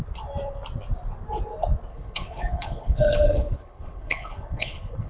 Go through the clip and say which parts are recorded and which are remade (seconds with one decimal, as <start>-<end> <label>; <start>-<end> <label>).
0.0-1.9 recorded; 1.9-5.1 remade